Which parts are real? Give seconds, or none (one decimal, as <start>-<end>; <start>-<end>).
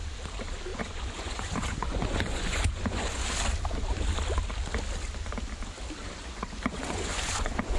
0.0-0.7; 3.3-6.0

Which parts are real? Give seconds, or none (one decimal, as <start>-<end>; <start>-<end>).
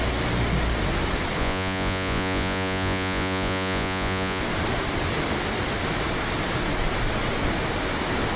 0.0-1.4; 4.4-8.4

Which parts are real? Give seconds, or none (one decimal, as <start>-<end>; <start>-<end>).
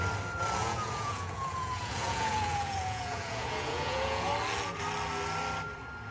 0.0-0.6; 4.3-6.1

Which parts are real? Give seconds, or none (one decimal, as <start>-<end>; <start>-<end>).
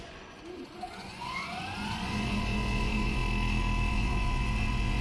3.2-3.9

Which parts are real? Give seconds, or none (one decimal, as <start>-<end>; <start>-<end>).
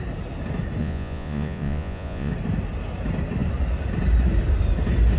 0.0-0.8; 2.3-5.2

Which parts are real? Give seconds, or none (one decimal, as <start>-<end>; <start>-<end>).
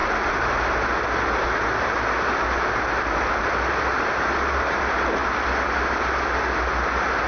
0.0-7.3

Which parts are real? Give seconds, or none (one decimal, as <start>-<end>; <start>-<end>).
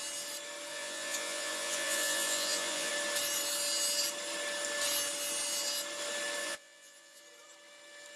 0.0-0.7; 2.9-6.4; 7.2-8.2